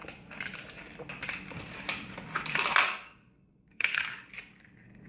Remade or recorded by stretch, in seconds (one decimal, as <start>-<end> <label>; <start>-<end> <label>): 0.0-2.8 recorded; 2.8-4.0 remade; 4.0-5.1 recorded